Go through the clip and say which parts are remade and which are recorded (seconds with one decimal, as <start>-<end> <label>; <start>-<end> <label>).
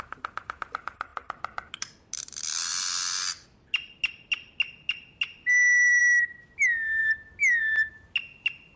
0.0-8.8 recorded